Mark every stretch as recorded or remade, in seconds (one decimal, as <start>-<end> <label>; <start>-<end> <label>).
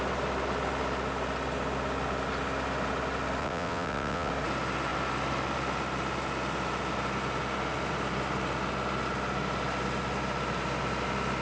0.0-3.4 recorded; 3.4-4.3 remade; 4.3-11.4 recorded